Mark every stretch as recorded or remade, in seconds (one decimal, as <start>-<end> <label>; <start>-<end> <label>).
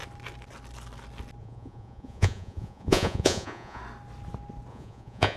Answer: 0.0-1.4 recorded; 1.4-3.8 remade; 3.8-4.7 recorded; 4.7-5.4 remade